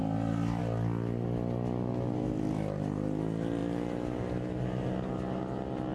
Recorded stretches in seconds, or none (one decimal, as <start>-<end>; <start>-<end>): 0.0-5.9